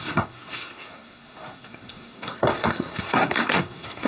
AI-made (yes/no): yes